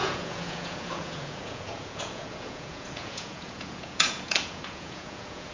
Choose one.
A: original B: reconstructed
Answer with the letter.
B